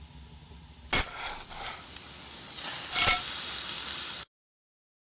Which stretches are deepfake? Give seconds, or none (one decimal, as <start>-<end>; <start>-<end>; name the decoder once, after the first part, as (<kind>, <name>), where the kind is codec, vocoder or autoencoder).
none